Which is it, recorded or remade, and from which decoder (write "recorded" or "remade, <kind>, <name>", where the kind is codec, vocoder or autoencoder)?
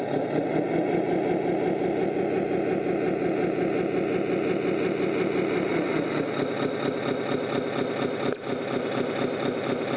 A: recorded